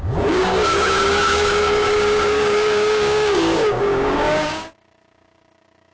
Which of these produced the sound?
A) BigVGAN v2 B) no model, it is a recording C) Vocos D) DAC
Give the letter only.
D